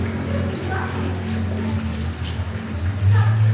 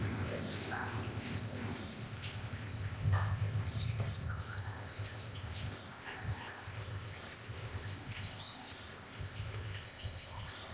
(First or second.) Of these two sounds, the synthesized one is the second